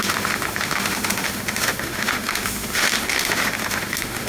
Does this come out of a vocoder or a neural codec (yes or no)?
yes